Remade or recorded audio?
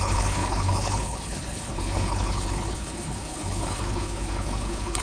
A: remade